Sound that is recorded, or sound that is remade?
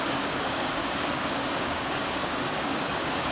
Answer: remade